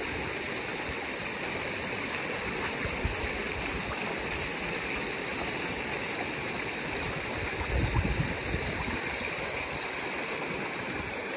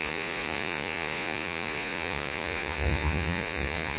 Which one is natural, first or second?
first